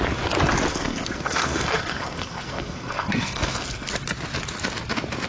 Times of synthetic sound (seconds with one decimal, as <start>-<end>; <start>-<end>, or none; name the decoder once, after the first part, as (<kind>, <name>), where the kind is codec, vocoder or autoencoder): 0.7-3.9 (codec, SNAC)